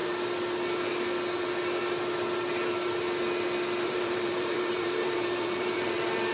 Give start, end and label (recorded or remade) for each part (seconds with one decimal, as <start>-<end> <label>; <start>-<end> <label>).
0.0-3.8 recorded; 3.8-6.3 remade